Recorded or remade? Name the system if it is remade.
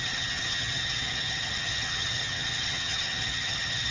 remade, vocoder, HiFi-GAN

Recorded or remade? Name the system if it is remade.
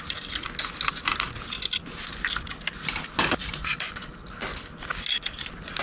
recorded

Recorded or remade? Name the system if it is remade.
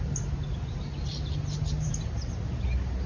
recorded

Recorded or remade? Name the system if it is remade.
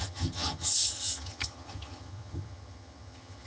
remade, vocoder, HiFi-GAN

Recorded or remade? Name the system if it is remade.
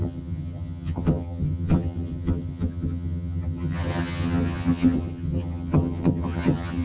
remade, vocoder, HiFi-GAN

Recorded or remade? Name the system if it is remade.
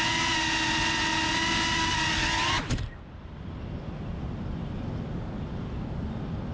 recorded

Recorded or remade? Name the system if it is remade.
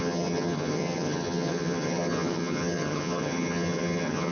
remade, vocoder, HiFi-GAN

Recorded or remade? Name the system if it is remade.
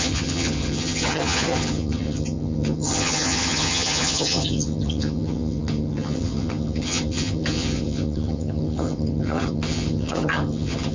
remade, vocoder, HiFi-GAN